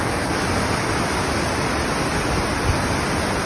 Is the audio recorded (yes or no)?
yes